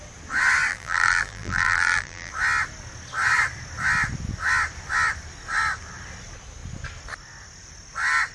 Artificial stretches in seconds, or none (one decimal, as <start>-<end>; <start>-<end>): 0.7-2.3